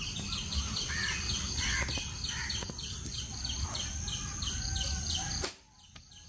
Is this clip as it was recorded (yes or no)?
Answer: yes